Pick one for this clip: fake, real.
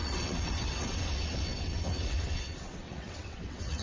fake